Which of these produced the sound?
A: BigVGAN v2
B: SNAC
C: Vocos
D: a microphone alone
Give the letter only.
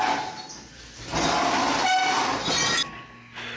D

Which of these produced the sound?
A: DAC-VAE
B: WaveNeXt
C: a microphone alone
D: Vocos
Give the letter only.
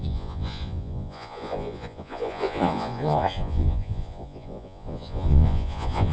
D